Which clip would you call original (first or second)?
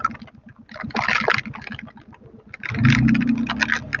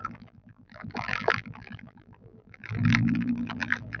first